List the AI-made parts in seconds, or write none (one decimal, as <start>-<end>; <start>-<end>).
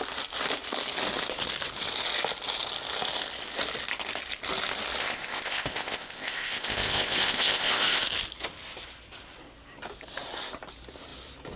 5.0-8.0